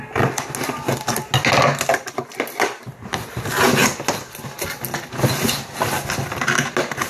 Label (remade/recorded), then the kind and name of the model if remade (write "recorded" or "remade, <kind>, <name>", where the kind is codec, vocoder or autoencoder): recorded